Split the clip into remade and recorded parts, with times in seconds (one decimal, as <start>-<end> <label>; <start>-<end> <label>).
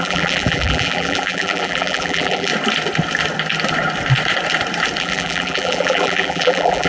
0.0-2.5 remade; 2.5-5.0 recorded; 5.0-6.9 remade